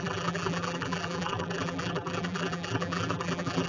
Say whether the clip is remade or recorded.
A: remade